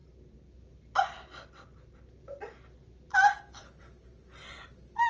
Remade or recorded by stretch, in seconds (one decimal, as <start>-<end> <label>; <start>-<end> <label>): 0.0-5.1 recorded